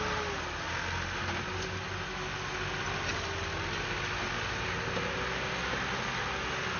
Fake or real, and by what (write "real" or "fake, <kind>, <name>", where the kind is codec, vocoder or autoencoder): real